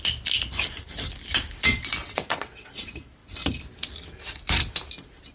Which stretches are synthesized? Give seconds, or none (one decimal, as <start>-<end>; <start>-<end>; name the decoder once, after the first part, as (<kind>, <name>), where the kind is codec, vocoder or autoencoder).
2.0-2.7 (vocoder, WaveNeXt)